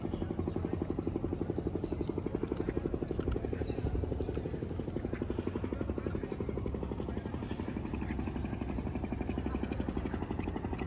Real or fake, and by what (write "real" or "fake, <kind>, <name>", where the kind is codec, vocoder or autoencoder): real